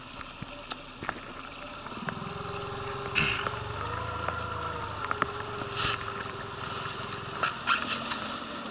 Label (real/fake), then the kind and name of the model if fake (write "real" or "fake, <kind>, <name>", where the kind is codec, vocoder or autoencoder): real